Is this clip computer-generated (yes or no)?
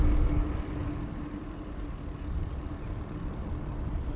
no